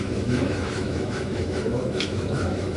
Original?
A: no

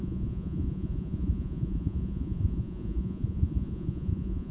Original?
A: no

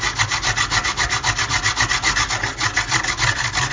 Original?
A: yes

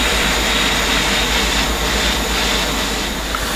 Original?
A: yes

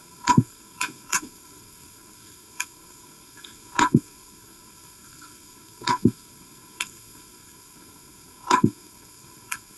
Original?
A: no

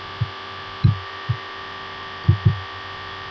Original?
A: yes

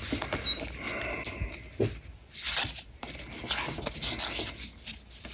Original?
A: yes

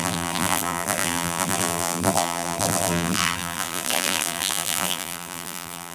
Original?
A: no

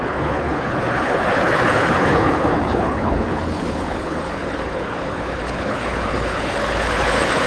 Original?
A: no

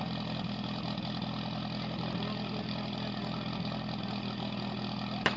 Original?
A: yes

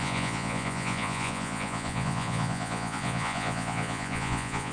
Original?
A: no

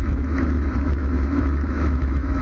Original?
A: no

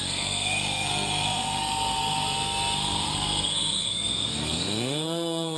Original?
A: no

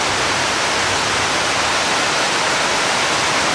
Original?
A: yes